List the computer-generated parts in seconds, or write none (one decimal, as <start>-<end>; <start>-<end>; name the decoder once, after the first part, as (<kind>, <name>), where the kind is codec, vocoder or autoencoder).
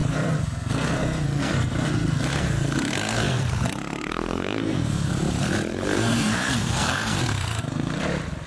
0.0-5.1 (codec, SNAC); 5.7-8.0